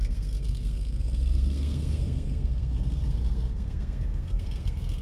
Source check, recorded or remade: remade